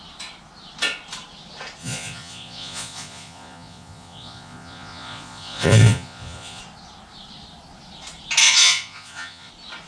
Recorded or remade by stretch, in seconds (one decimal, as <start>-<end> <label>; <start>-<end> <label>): 0.0-1.8 recorded; 1.8-6.6 remade; 6.6-8.4 recorded; 8.4-9.5 remade; 9.5-9.9 recorded